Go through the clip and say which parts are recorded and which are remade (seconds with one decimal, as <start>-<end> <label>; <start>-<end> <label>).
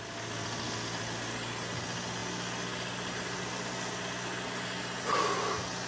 0.0-5.9 recorded